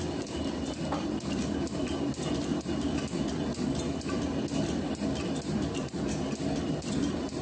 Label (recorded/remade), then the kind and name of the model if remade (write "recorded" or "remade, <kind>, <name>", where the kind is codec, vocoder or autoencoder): recorded